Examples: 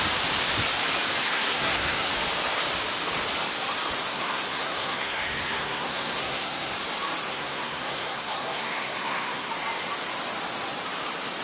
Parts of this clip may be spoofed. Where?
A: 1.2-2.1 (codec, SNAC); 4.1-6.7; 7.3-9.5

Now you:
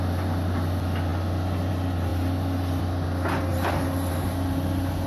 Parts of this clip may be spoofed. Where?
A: none

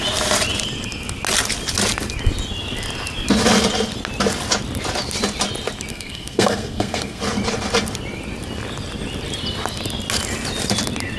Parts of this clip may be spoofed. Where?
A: 5.9-7.2 (codec, SNAC)

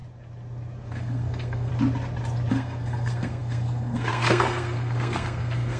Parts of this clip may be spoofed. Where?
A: 0.9-1.7 (codec, SNAC); 2.5-5.8

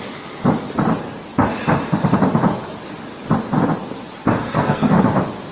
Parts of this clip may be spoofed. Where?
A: 4.4-5.0 (codec, SNAC)

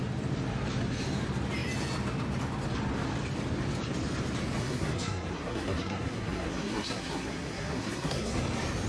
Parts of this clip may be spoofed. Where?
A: 4.6-8.4 (codec, SNAC)

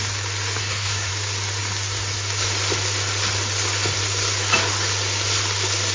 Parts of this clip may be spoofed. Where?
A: 0.6-1.1 (codec, SNAC)

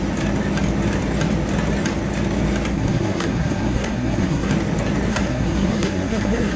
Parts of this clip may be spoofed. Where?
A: 2.7-4.5 (codec, SNAC); 5.1-6.6